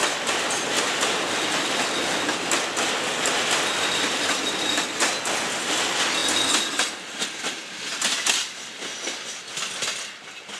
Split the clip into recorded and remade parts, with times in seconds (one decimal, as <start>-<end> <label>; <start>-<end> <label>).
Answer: 0.0-10.6 recorded